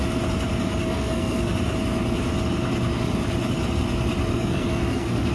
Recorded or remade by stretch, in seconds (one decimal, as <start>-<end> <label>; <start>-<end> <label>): 0.0-0.8 recorded; 0.8-1.5 remade; 1.5-4.3 recorded; 4.3-5.3 remade